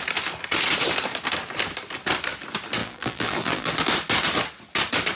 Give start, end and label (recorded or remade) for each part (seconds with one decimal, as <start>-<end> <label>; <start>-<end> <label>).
0.0-2.8 recorded; 2.8-3.7 remade; 3.7-5.2 recorded